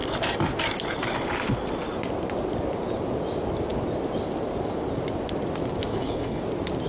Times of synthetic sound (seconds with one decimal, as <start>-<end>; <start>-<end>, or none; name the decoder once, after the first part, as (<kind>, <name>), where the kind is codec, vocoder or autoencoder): 5.9-6.4 (codec, HILCodec)